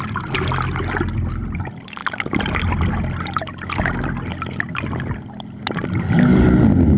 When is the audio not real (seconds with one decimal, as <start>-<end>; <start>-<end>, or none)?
none